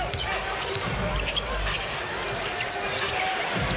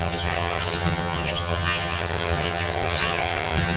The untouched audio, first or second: first